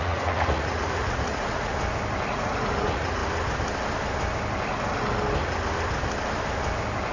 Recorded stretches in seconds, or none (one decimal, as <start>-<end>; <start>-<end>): 1.7-2.3; 3.2-7.1